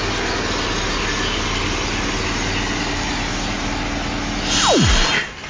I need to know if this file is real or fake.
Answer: real